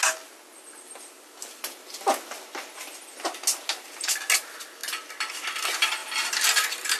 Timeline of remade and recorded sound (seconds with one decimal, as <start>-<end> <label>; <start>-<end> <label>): 0.0-7.0 recorded